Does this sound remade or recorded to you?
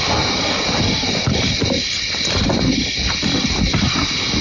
recorded